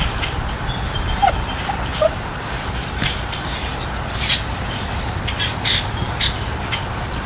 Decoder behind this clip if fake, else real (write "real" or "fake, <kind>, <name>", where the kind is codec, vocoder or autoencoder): real